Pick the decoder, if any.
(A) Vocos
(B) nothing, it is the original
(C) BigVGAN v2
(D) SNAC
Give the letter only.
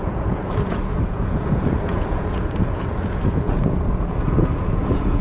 A